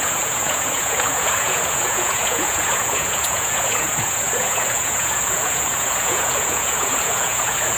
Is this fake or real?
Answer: fake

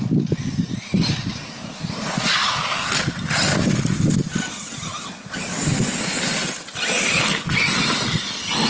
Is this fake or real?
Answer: real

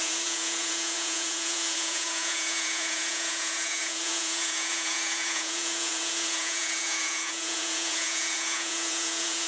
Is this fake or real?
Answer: fake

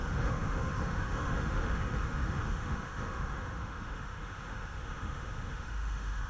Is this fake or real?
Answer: fake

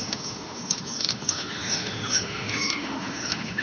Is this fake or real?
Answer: fake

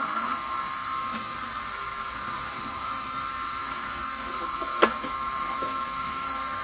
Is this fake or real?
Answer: fake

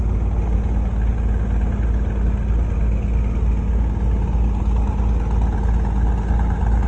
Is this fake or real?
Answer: real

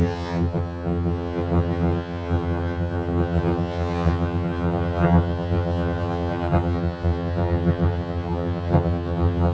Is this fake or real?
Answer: fake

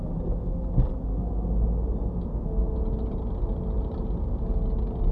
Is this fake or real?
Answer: real